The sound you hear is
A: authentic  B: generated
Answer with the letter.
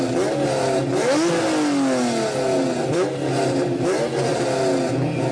A